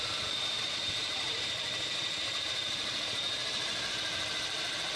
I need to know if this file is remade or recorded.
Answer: remade